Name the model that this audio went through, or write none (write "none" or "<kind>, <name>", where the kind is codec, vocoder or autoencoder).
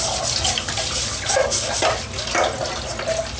none